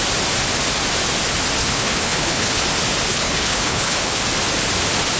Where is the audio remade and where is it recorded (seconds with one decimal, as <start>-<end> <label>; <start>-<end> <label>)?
0.0-1.6 recorded; 1.6-2.6 remade; 2.6-3.1 recorded; 3.1-4.2 remade; 4.2-5.2 recorded